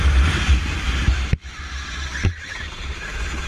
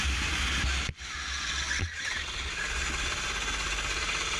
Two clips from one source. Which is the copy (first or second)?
first